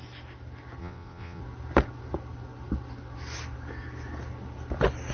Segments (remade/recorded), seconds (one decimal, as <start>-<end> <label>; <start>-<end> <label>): 0.0-0.8 recorded; 0.8-1.4 remade; 1.4-5.1 recorded